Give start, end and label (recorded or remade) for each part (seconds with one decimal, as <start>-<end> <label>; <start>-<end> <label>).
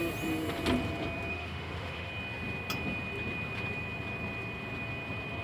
0.0-1.3 recorded; 1.3-2.1 remade; 2.1-5.4 recorded